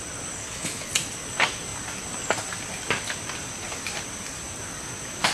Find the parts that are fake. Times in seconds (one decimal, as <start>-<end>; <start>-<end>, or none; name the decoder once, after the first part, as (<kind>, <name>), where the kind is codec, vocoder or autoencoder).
0.4-0.9 (codec, HILCodec)

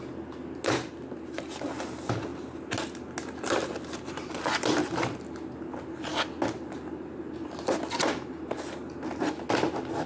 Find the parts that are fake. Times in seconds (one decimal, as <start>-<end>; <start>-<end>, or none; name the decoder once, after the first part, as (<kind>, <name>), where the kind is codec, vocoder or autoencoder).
none